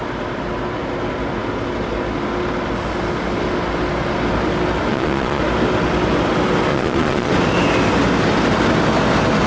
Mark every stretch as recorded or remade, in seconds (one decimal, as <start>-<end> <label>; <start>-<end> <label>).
0.0-4.9 recorded; 4.9-5.4 remade; 5.4-6.7 recorded; 6.7-7.3 remade; 7.3-9.5 recorded